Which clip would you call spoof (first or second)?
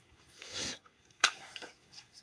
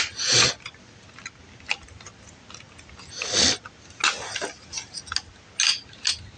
first